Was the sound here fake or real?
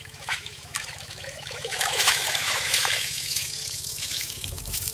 fake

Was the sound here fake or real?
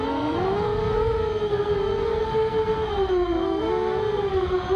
fake